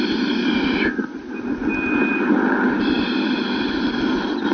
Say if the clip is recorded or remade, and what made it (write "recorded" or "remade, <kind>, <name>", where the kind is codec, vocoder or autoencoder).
recorded